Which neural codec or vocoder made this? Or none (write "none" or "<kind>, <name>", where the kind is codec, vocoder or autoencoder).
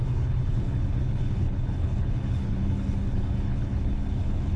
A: codec, HILCodec